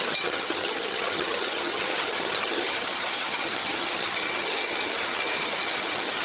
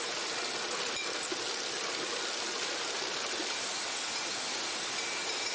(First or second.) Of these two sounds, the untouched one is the second